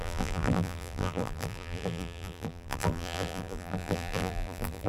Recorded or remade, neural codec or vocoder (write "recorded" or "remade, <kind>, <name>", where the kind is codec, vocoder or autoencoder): remade, vocoder, BigVGAN v2